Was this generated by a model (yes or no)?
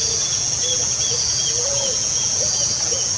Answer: yes